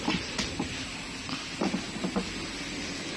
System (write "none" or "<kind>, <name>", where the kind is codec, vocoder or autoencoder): none